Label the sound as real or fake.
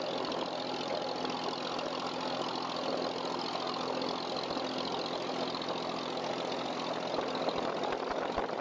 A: real